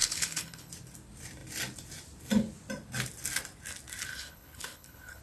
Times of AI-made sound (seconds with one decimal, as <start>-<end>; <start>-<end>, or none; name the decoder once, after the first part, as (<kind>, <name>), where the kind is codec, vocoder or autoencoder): 0.0-0.7 (codec, HILCodec); 4.1-5.2